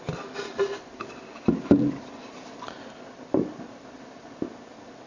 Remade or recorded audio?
recorded